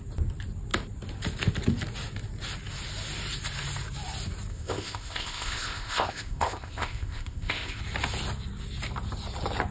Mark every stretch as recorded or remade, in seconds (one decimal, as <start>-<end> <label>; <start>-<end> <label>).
0.0-4.5 recorded; 4.5-7.8 remade; 7.8-9.7 recorded